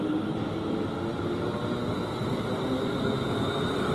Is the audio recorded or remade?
recorded